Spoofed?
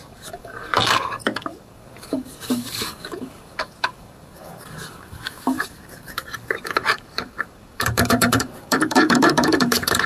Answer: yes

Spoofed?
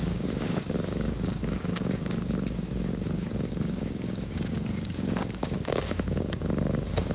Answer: yes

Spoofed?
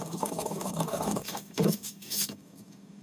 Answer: yes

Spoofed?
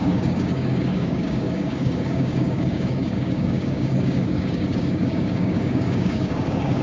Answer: yes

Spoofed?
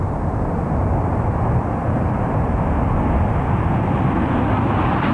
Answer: no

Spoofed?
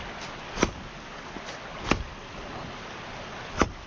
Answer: no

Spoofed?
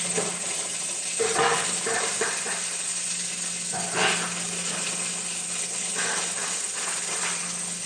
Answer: no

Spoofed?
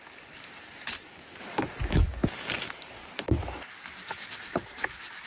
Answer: yes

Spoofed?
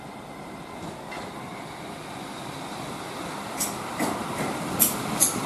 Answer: no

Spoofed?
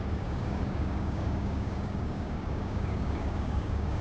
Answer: yes